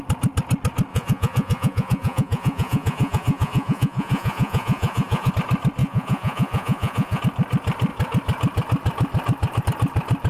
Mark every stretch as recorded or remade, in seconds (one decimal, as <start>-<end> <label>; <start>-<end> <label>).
0.0-0.9 recorded; 0.9-5.3 remade; 5.3-5.8 recorded; 5.8-7.2 remade; 7.2-10.3 recorded